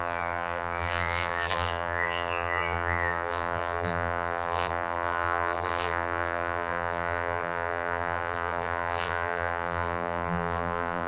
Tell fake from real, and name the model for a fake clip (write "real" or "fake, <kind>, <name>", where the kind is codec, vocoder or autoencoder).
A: fake, vocoder, BigVGAN v2